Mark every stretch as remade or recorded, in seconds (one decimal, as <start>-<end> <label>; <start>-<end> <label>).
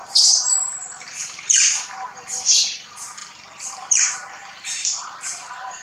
0.0-5.8 remade